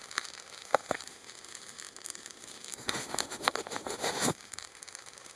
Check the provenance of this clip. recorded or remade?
remade